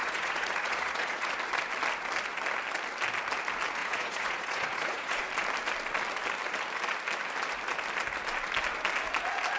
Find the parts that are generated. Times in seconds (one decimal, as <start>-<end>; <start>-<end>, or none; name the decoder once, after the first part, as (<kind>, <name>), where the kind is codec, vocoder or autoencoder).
0.0-1.3 (vocoder, Vocos); 3.8-5.2